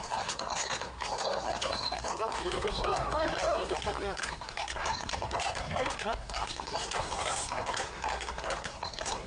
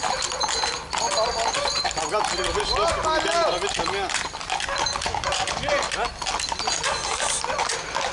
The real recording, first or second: second